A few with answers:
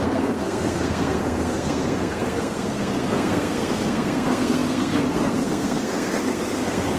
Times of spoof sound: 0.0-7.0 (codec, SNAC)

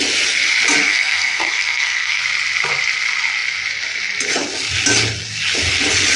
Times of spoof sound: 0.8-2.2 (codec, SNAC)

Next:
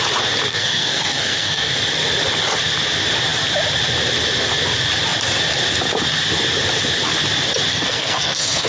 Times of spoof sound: 0.5-1.7 (codec, SNAC); 7.7-8.7

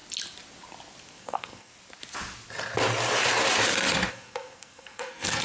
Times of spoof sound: 1.1-1.7 (codec, SNAC); 4.1-5.4

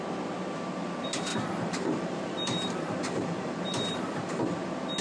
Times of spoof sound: 1.3-4.3 (vocoder, BigVGAN v2)

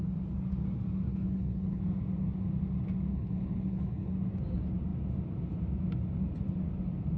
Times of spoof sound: 1.1-1.8 (codec, HILCodec); 3.1-4.1